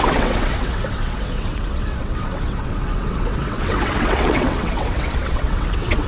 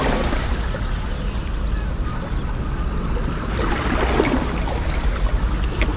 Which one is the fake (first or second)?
first